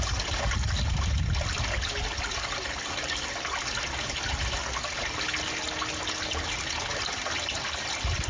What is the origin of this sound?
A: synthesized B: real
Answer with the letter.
B